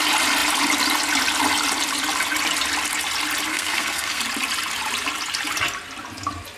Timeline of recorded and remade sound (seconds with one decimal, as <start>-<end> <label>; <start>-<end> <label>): 0.0-3.5 recorded; 3.5-4.2 remade; 4.2-6.6 recorded